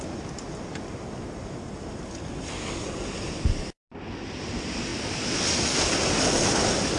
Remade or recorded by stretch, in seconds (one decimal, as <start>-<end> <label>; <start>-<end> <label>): 0.0-7.0 recorded